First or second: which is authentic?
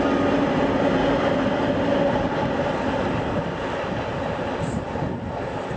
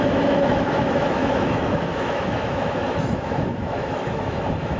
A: first